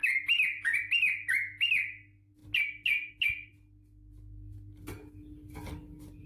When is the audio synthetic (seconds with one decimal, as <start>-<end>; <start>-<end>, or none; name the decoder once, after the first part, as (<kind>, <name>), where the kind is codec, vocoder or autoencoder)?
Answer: none